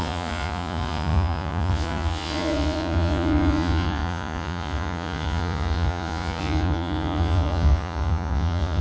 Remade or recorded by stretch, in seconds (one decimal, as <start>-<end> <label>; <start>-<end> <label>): 0.0-8.8 remade